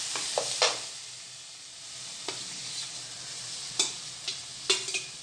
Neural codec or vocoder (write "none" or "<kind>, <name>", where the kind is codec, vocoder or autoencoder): none